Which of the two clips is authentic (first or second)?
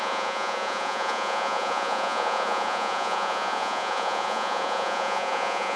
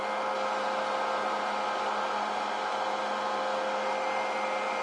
second